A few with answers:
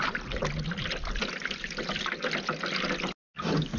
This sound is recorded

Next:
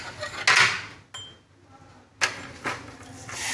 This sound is recorded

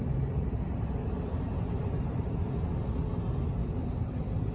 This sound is recorded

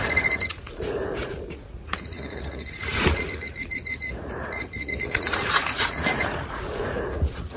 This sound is remade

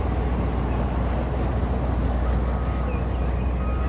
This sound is recorded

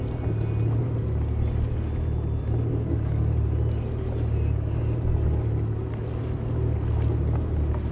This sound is recorded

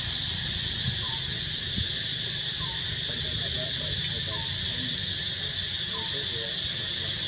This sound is recorded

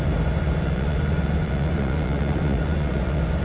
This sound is remade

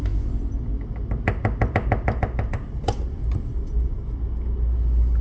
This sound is recorded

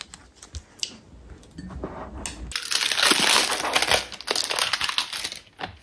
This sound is recorded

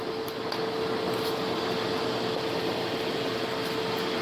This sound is recorded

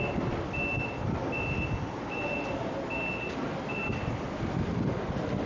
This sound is recorded